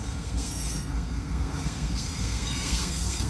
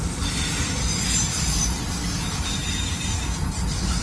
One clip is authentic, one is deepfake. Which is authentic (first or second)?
second